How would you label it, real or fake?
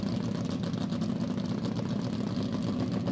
real